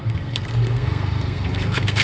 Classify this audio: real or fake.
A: fake